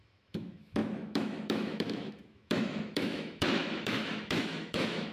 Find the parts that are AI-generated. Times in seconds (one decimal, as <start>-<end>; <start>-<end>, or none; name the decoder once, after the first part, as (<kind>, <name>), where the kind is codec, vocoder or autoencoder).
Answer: 0.0-5.1 (autoencoder, DAC-VAE)